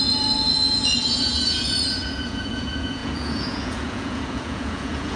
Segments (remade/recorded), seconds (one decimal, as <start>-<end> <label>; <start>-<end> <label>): 0.0-5.2 remade